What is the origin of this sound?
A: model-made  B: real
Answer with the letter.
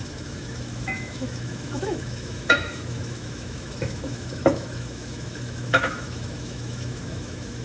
A